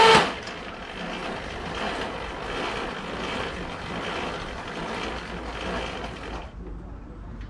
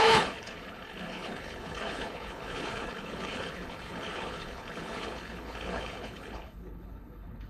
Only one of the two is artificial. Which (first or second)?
second